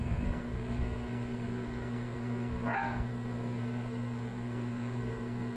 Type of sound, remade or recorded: remade